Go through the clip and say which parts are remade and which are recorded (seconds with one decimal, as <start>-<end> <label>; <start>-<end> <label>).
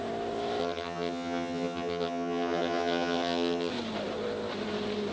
0.0-0.6 recorded; 0.6-3.7 remade; 3.7-5.1 recorded